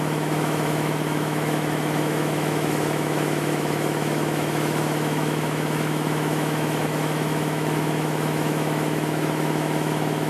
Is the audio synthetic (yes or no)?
yes